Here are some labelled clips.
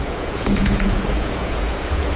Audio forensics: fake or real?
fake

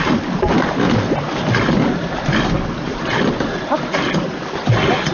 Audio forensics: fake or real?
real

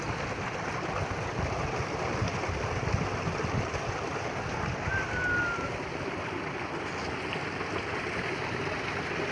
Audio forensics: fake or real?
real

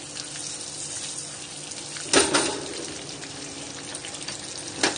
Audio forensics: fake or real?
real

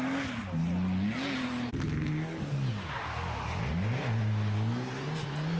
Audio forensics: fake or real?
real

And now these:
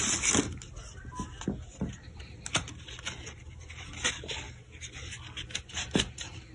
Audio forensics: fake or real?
real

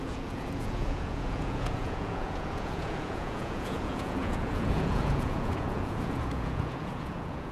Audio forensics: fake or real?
fake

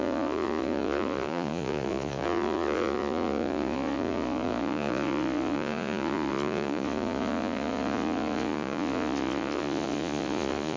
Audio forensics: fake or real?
fake